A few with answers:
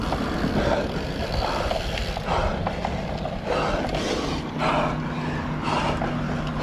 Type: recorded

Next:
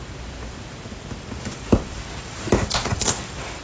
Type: remade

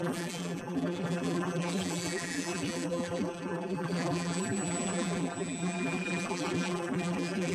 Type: remade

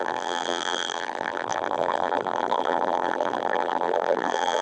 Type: remade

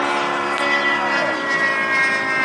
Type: recorded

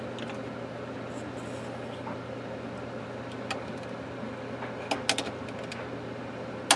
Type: recorded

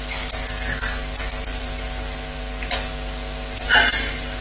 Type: recorded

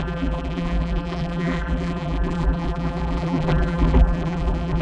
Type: remade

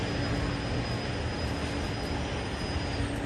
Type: recorded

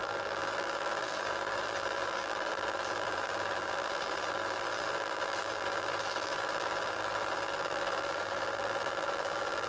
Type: remade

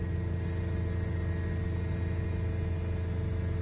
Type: recorded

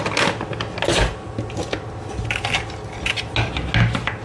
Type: recorded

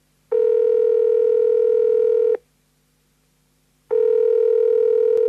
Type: recorded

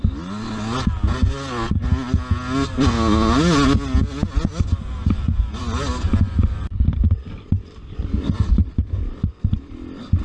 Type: recorded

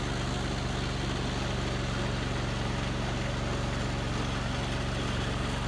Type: recorded